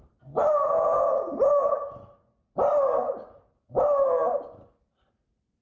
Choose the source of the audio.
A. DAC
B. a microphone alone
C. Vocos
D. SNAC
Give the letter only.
B